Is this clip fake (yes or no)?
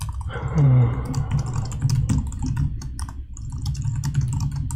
no